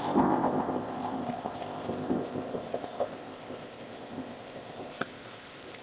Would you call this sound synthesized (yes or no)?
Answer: yes